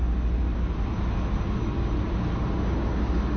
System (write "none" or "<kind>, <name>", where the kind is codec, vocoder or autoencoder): none